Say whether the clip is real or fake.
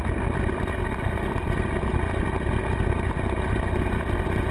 real